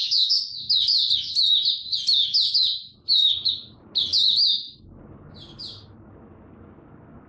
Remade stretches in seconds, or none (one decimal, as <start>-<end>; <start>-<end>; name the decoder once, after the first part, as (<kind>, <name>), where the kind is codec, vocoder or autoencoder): 0.0-0.6 (autoencoder, DAC-VAE); 2.7-3.5